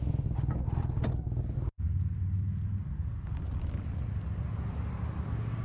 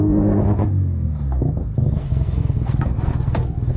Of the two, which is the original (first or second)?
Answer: first